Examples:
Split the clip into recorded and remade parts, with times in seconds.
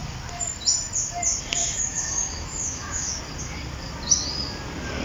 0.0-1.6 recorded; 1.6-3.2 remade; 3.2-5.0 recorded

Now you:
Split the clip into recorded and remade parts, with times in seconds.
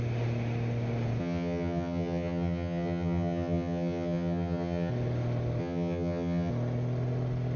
0.0-1.2 recorded; 1.2-4.9 remade; 4.9-5.6 recorded; 5.6-6.5 remade; 6.5-7.6 recorded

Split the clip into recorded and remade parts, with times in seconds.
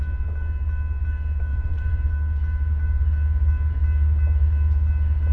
0.0-1.5 recorded; 1.5-2.1 remade; 2.1-5.3 recorded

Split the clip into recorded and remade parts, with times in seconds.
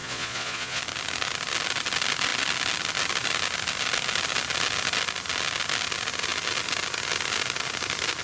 0.0-0.8 remade; 0.8-8.2 recorded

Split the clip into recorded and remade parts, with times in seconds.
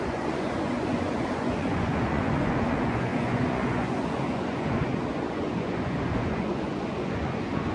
0.0-7.7 remade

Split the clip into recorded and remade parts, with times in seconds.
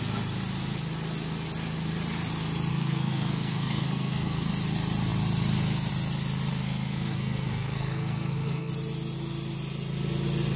0.0-2.7 recorded; 2.7-4.5 remade; 4.5-6.5 recorded; 6.5-8.7 remade; 8.7-10.6 recorded